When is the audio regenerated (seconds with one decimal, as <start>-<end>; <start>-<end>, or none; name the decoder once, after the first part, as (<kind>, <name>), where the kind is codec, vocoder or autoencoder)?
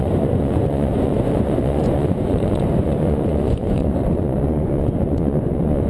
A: 0.0-5.9 (vocoder, Vocos)